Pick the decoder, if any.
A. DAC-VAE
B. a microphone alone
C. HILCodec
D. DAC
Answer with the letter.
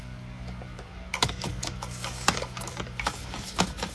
D